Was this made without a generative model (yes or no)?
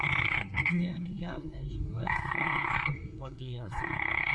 no